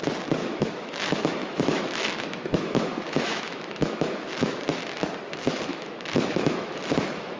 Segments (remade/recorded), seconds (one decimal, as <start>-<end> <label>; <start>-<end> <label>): 0.0-0.4 recorded; 0.4-4.8 remade; 4.8-5.7 recorded; 5.7-7.4 remade